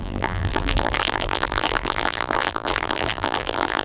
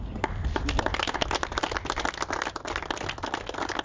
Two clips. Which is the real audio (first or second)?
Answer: second